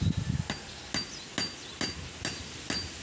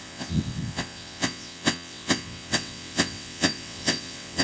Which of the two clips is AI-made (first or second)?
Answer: second